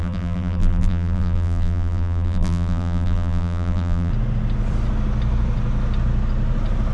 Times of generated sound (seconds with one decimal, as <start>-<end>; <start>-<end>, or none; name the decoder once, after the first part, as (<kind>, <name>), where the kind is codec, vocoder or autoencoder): 0.0-4.1 (vocoder, BigVGAN v2)